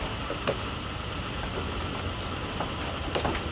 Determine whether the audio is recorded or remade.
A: recorded